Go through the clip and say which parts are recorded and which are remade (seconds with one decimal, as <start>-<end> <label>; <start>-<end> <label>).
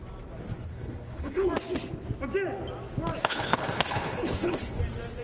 0.0-0.7 recorded; 0.7-1.5 remade; 1.5-3.2 recorded; 3.2-4.8 remade; 4.8-5.2 recorded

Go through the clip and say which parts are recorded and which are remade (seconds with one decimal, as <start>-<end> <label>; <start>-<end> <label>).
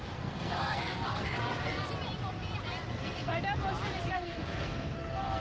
0.0-1.8 remade; 1.8-2.9 recorded; 2.9-3.3 remade; 3.3-4.1 recorded; 4.1-5.4 remade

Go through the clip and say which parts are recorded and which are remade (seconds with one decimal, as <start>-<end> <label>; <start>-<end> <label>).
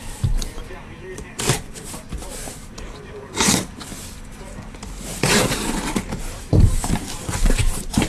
0.0-3.9 remade; 3.9-6.4 recorded; 6.4-8.1 remade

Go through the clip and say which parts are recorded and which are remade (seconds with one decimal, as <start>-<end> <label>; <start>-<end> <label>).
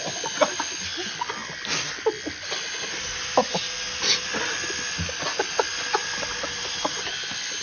0.0-7.6 recorded